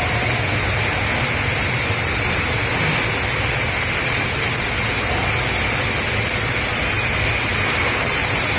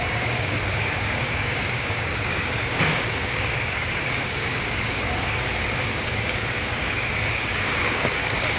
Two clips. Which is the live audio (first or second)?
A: first